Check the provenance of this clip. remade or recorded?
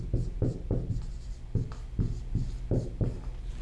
remade